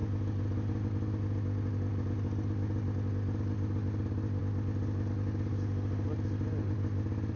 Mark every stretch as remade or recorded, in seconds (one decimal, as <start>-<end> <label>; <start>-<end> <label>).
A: 0.0-7.4 recorded